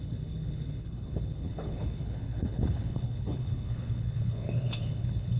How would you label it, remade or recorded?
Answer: remade